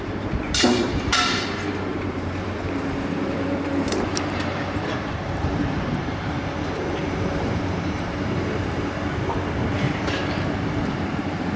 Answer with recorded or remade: remade